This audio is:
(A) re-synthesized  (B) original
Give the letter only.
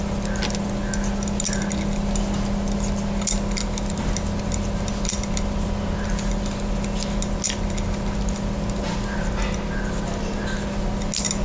B